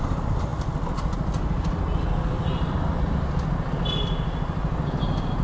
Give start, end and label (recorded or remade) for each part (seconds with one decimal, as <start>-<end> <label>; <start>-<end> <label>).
0.0-5.4 recorded